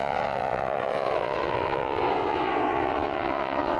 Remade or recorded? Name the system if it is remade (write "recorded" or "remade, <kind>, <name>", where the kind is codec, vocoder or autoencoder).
remade, vocoder, WaveNeXt